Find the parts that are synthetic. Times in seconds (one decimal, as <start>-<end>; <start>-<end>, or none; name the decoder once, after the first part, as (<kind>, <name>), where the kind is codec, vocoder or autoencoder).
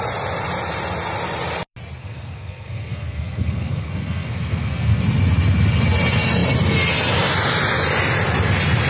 2.0-5.0 (codec, SNAC)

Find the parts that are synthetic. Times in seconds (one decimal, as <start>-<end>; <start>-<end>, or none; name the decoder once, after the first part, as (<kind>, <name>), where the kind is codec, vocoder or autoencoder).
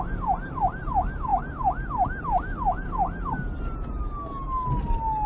none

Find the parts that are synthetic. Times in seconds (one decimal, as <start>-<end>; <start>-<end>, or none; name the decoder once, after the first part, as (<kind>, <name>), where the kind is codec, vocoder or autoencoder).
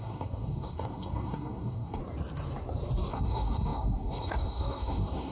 0.0-2.0 (codec, SNAC); 3.1-5.3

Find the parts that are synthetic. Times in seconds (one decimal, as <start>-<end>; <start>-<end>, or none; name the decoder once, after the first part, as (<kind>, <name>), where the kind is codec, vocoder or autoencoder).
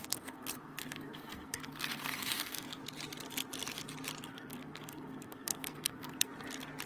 0.0-2.8 (codec, SNAC); 4.3-6.3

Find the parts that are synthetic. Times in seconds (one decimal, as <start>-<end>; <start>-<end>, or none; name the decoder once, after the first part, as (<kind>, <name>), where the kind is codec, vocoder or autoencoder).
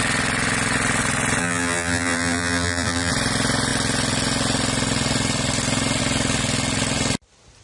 1.4-3.1 (vocoder, BigVGAN v2)